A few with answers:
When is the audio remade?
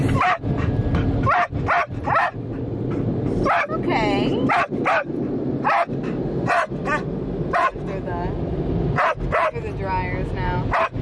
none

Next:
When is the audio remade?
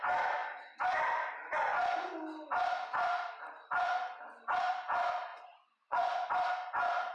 5.3-6.3 (vocoder, Vocos)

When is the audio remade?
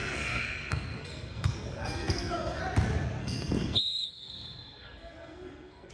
0.0-2.6 (codec, SNAC); 3.2-5.9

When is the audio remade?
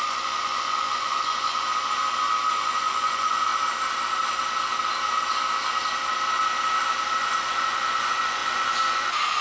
0.0-1.6 (vocoder, Vocos); 2.5-3.5; 7.2-9.4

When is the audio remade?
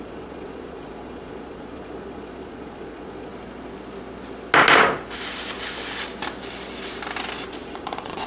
0.0-3.3 (vocoder, Vocos); 7.5-8.3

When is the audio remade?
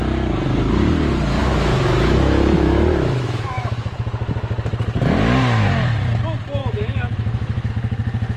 1.4-4.0 (autoencoder, DAC-VAE); 6.6-7.7